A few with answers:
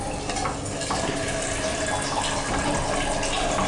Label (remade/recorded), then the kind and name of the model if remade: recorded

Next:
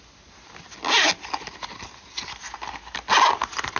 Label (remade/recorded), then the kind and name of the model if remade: recorded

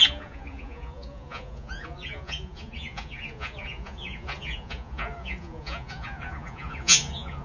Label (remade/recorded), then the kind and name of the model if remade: remade, vocoder, Vocos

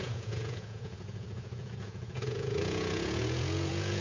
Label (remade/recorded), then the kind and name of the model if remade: remade, vocoder, Vocos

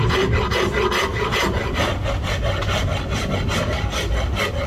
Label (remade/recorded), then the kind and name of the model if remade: recorded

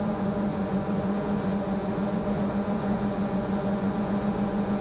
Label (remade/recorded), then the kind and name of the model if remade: remade, vocoder, Vocos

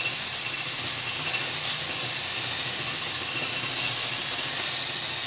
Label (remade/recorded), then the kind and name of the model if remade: recorded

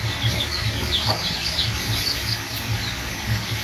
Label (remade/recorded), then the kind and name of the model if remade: remade, codec, DAC